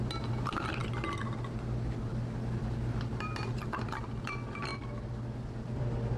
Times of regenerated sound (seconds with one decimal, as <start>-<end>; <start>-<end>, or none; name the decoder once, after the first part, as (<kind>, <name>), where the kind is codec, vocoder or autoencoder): none